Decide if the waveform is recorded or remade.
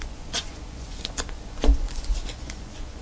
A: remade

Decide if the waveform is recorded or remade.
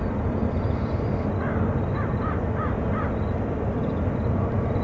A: recorded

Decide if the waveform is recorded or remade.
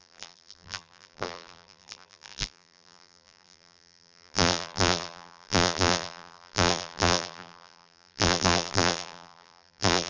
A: remade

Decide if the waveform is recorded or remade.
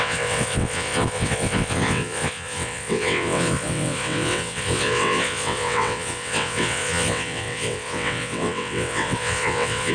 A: remade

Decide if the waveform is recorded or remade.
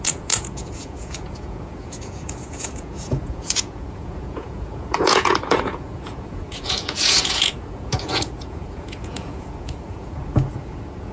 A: remade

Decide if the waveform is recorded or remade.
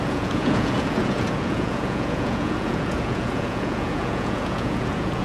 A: remade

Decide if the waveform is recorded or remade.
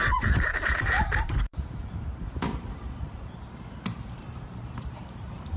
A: remade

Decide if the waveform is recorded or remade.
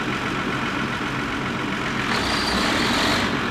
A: recorded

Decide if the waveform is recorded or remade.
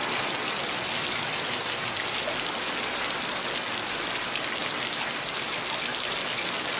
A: recorded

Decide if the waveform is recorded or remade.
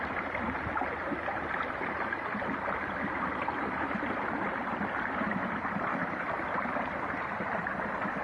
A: remade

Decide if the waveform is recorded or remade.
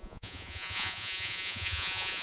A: remade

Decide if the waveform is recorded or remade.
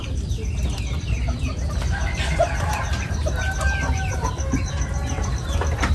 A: recorded